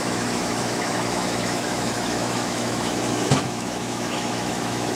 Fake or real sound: fake